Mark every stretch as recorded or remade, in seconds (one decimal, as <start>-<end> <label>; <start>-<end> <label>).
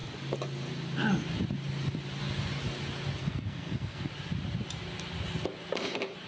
0.0-3.2 recorded; 3.2-4.1 remade; 4.1-6.3 recorded